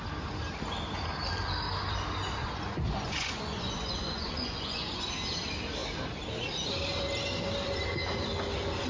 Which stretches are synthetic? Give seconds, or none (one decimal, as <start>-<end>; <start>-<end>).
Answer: 2.4-5.1

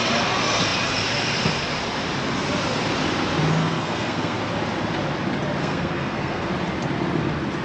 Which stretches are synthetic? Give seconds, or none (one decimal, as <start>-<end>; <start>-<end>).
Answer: 3.6-4.4; 5.6-6.5

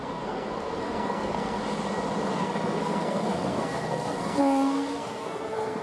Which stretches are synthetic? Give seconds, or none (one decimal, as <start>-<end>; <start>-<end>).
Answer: 0.0-1.6; 2.3-5.8

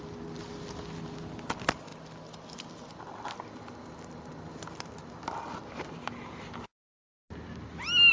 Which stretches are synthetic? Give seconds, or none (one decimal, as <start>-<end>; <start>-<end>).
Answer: none

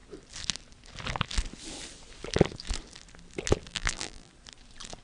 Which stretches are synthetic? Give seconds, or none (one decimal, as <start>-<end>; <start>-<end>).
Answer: 3.7-4.3

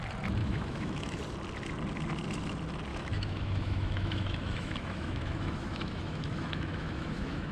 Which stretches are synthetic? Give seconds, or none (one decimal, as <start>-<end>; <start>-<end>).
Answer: 0.4-1.2; 2.9-7.5